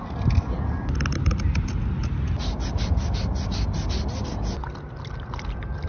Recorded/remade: recorded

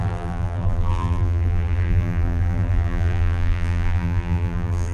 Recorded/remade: remade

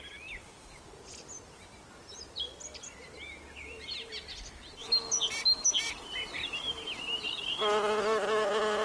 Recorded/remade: recorded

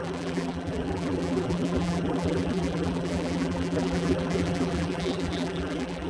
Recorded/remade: remade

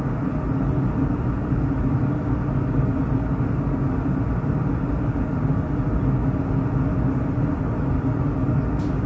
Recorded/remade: recorded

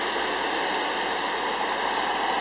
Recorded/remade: recorded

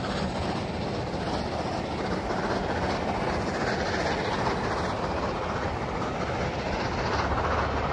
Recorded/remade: recorded